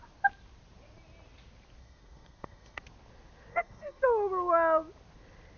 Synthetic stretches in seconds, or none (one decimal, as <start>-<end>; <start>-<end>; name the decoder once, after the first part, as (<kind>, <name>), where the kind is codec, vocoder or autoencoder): 1.8-2.8 (codec, SNAC); 3.5-4.0